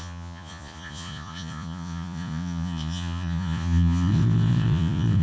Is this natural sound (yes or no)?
no